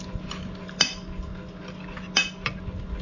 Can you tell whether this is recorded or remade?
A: recorded